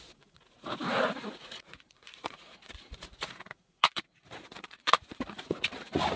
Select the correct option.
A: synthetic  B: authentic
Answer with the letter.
A